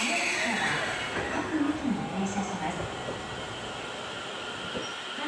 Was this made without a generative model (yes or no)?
yes